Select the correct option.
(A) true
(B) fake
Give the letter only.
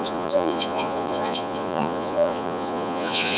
B